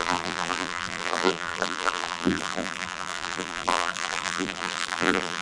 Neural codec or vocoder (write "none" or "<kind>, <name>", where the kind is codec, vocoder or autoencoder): vocoder, BigVGAN v2